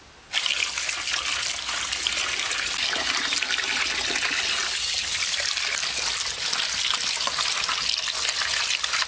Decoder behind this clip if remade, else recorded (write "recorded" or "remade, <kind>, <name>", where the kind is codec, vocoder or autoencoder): recorded